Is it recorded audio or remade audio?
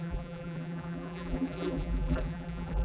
remade